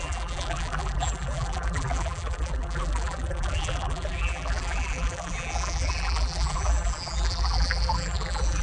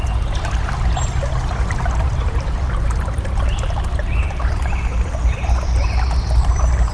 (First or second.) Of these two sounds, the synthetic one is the first